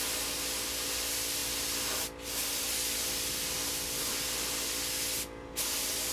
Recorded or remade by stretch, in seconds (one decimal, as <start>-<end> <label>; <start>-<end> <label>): 0.0-6.1 recorded